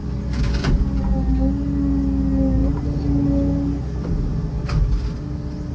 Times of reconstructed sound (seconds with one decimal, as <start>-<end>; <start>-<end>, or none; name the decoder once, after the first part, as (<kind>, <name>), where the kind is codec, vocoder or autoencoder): none